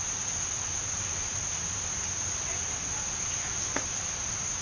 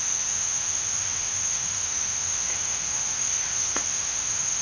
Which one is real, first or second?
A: first